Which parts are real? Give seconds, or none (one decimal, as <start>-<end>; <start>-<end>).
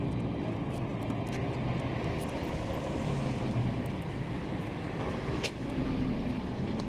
0.0-3.6; 5.8-6.9